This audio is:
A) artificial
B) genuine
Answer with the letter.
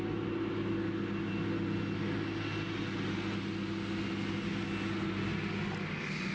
B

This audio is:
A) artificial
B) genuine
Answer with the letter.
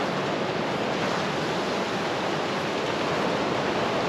B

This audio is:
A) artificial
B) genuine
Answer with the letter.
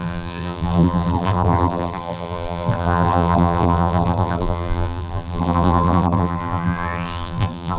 A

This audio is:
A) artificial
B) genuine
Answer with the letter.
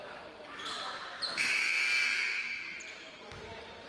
A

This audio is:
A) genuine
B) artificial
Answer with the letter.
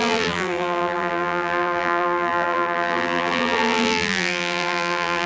B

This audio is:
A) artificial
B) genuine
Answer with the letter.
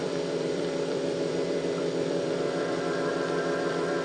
A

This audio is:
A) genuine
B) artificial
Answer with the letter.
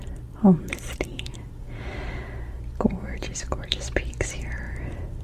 B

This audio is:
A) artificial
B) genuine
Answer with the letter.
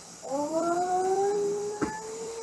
A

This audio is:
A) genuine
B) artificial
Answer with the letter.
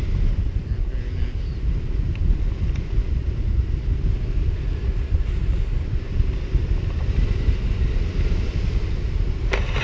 A